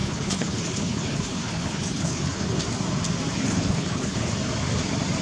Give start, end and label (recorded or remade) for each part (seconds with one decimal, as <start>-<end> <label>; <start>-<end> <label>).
0.0-2.6 remade; 2.6-3.3 recorded; 3.3-4.3 remade; 4.3-5.2 recorded